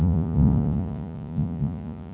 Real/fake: fake